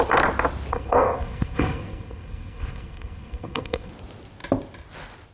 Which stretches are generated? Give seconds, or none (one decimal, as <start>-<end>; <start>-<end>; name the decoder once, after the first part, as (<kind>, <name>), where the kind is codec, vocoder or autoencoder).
0.7-3.9 (codec, SNAC)